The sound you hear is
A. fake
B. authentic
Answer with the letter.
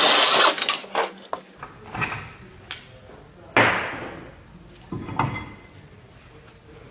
B